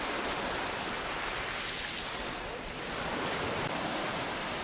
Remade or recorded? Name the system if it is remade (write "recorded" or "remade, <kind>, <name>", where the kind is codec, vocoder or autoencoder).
recorded